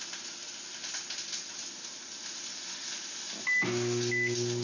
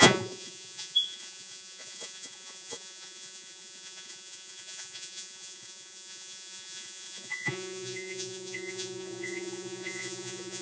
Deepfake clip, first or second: second